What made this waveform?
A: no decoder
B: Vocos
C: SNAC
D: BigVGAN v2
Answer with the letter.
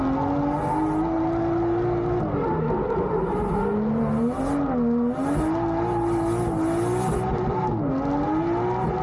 A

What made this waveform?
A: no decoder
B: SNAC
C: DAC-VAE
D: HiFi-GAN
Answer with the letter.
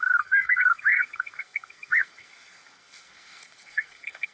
B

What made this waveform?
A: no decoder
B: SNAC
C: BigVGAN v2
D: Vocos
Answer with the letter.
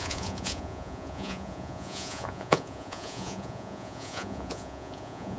D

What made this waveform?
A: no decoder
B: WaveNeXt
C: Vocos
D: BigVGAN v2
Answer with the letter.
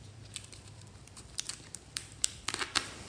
D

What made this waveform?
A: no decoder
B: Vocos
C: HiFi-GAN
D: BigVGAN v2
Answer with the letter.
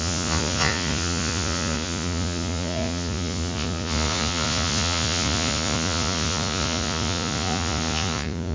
B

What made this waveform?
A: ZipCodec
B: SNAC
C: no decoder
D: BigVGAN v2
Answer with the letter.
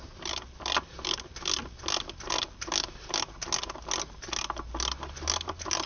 C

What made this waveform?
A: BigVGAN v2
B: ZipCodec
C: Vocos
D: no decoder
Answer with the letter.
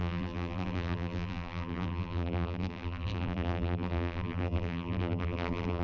A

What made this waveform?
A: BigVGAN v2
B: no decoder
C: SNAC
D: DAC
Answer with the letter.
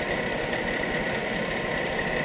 A